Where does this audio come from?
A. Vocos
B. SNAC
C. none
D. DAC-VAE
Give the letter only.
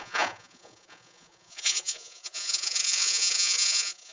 A